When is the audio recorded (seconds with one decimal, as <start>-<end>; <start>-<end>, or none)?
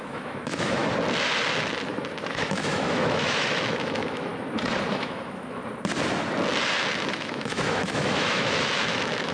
0.8-2.3; 4.3-4.9; 5.6-7.1